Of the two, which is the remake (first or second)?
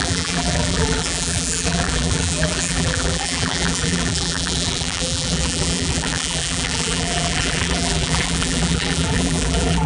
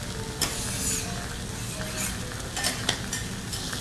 first